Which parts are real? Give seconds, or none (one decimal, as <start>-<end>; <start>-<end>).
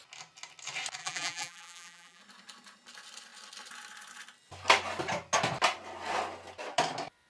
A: 0.0-1.0; 2.2-7.3